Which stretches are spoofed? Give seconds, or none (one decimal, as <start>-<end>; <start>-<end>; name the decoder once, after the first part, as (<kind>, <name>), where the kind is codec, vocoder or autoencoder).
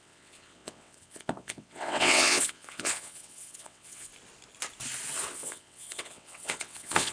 0.0-4.1 (vocoder, WaveNeXt); 5.3-7.1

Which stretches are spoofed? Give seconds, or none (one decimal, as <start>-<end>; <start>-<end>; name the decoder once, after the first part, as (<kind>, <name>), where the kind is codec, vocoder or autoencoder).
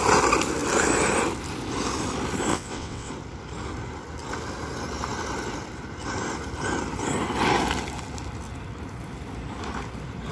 2.5-3.1 (vocoder, WaveNeXt)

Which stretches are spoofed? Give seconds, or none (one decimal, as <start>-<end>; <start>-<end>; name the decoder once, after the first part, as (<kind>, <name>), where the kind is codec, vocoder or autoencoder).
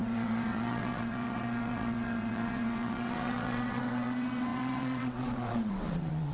0.0-6.3 (vocoder, WaveNeXt)